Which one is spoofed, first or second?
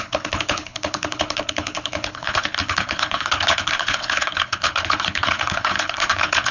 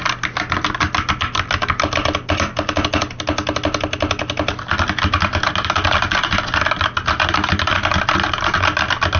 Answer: first